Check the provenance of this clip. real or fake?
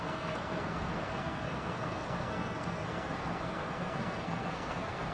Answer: fake